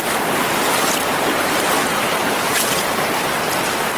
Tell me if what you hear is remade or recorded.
recorded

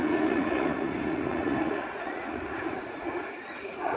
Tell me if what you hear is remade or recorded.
remade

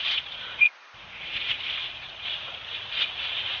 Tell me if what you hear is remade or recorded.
remade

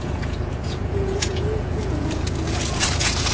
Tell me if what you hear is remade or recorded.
remade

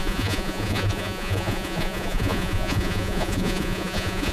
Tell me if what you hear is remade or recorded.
remade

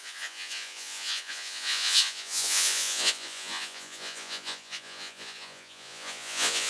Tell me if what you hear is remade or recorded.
remade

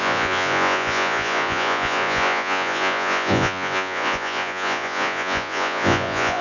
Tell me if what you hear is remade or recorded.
remade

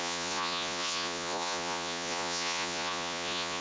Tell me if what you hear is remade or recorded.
remade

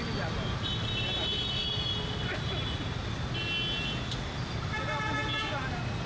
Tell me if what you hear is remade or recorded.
recorded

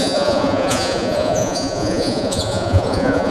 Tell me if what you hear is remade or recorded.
remade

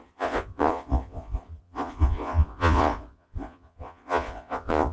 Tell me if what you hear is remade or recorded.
remade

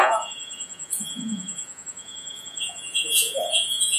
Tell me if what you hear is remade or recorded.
remade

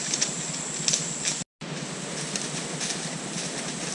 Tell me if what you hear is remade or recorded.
recorded